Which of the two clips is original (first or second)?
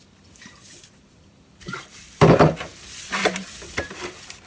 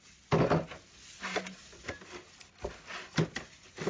second